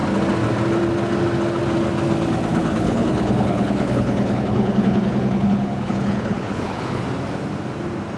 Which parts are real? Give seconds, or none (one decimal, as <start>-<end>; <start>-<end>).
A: 0.0-2.5; 7.0-8.2

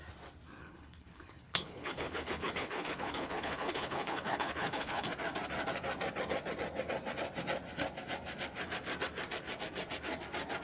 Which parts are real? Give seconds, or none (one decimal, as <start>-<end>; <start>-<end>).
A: 0.0-0.6; 5.1-10.6

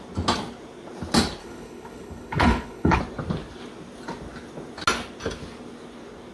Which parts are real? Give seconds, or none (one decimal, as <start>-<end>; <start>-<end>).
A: 0.0-1.4; 3.0-6.3

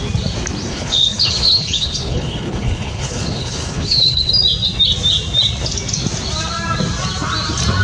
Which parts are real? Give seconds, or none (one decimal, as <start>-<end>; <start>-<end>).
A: 0.0-0.7; 4.3-7.8

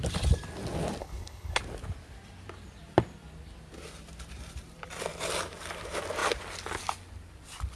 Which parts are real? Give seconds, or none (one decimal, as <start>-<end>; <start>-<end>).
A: 0.0-1.0; 1.6-7.8

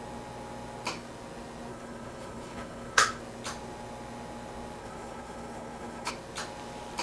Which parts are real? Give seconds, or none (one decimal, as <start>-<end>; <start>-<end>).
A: 0.0-1.7; 3.2-4.8; 6.1-7.0